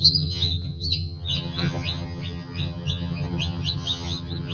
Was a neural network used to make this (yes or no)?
yes